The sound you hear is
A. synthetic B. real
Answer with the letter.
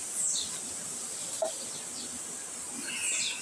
B